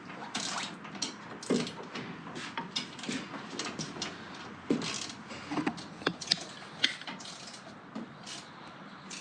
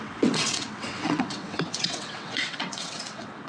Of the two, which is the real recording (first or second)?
first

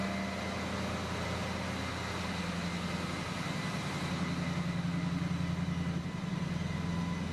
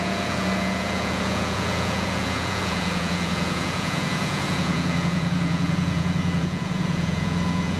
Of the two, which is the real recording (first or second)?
first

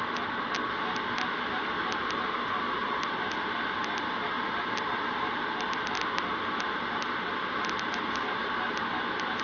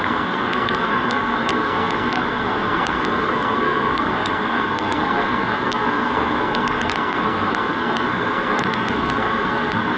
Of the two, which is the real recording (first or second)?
first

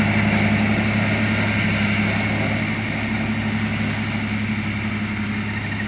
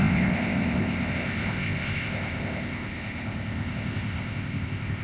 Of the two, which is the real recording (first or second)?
first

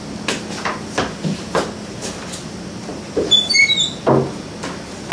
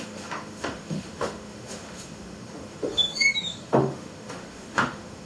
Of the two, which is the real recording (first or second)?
first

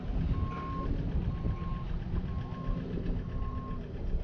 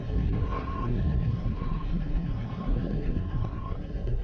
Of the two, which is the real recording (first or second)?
first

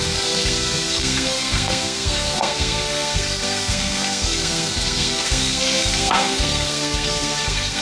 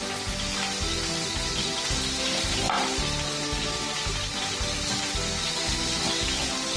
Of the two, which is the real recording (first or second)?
second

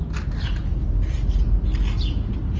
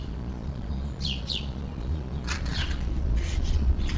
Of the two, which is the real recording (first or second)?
first